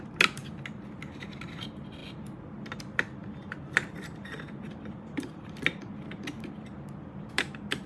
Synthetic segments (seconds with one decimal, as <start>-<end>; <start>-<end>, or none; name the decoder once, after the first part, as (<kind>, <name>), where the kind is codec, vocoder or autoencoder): 0.0-0.4 (vocoder, BigVGAN v2); 1.4-2.0; 2.8-7.9